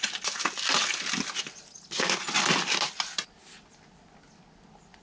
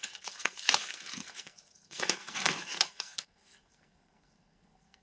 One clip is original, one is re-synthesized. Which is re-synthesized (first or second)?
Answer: second